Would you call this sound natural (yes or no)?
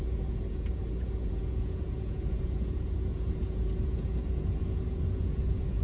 no